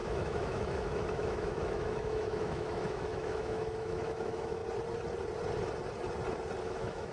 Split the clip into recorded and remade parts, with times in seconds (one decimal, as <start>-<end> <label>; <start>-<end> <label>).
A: 0.0-4.6 remade; 4.6-6.6 recorded; 6.6-7.1 remade